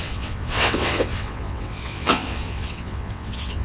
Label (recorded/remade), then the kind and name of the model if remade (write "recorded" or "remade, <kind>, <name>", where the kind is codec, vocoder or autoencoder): remade, vocoder, WaveNeXt